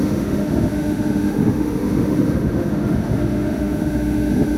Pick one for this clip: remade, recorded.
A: remade